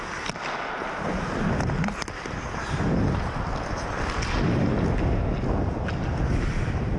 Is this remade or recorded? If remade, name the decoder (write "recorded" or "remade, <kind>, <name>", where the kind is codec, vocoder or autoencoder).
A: recorded